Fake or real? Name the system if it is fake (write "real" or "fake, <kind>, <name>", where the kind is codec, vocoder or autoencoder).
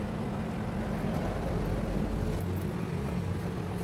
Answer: real